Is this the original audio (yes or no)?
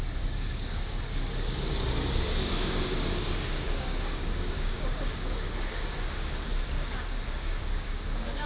no